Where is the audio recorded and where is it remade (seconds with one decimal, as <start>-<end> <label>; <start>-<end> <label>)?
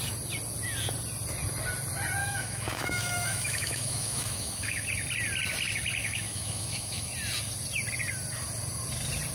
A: 0.0-2.2 recorded; 2.2-4.9 remade; 4.9-6.0 recorded; 6.0-7.1 remade; 7.1-9.3 recorded